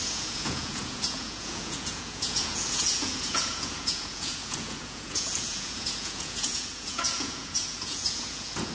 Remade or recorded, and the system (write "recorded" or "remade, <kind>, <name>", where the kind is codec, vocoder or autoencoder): remade, vocoder, Vocos